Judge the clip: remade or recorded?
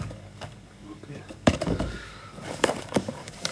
remade